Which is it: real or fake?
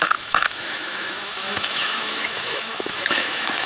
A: fake